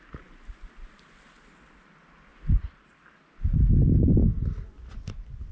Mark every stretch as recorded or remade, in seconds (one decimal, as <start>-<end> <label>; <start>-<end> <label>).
0.0-5.5 recorded